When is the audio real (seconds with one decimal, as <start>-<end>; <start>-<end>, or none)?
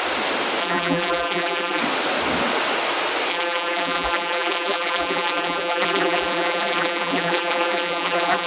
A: 0.0-0.6; 1.8-3.3